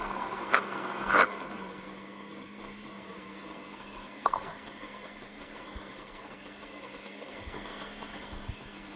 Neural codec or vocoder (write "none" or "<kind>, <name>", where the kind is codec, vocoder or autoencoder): codec, SNAC